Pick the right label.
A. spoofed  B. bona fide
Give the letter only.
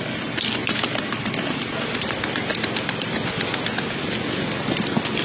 B